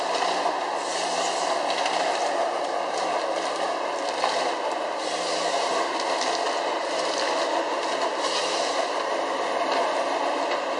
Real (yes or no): yes